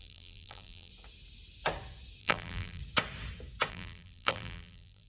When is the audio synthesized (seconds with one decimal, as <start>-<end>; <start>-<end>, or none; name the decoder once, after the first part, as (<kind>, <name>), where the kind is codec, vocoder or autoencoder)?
0.0-0.9 (vocoder, BigVGAN v2); 2.2-2.8; 3.7-5.1

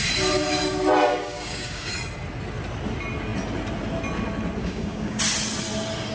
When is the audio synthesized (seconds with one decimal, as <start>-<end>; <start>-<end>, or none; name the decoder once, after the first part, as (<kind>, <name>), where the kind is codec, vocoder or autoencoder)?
1.1-1.9 (codec, DAC); 4.6-5.2

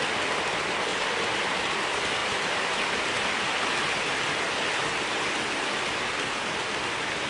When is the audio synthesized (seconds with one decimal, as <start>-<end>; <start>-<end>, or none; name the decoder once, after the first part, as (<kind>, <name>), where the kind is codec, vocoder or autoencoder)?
0.9-1.6 (vocoder, BigVGAN v2); 2.2-2.8

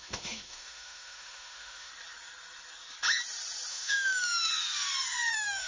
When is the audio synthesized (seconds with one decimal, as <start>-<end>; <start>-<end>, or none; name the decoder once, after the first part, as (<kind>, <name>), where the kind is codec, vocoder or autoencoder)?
0.0-1.9 (autoencoder, DAC-VAE); 3.7-4.5; 5.3-5.7

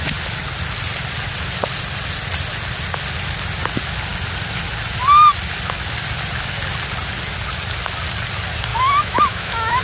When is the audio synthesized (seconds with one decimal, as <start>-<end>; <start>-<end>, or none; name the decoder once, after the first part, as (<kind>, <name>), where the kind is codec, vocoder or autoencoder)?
8.7-9.8 (autoencoder, DAC-VAE)